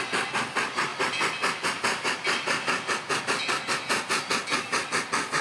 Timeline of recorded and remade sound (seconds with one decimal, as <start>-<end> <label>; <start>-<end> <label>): 0.0-5.4 recorded